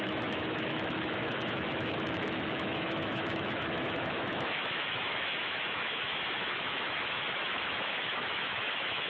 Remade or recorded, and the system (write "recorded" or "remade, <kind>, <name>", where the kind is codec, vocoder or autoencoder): remade, autoencoder, DAC-VAE